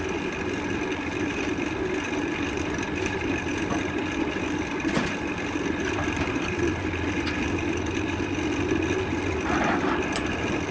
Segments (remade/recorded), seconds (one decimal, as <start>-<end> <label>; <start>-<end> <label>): 0.0-10.7 recorded